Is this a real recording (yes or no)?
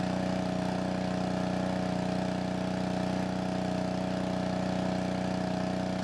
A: yes